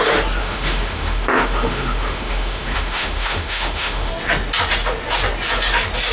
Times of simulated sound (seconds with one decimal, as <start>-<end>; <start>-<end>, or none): 0.4-4.1